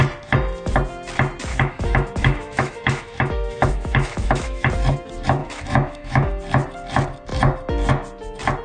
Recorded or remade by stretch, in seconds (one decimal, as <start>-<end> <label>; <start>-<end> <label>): 0.0-1.5 recorded; 1.5-4.7 remade; 4.7-5.4 recorded; 5.4-6.3 remade; 6.3-8.6 recorded